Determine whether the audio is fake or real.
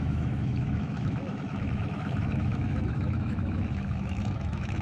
fake